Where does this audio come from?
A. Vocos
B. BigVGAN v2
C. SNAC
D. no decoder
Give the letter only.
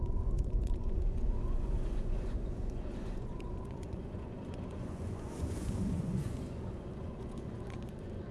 A